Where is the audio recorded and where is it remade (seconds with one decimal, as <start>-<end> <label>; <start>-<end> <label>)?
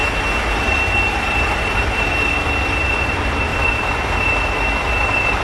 0.0-5.4 recorded